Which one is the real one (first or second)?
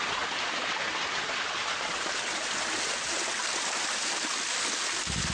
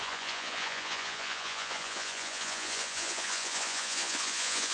first